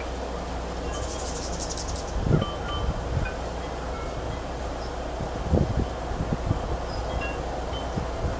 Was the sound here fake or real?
real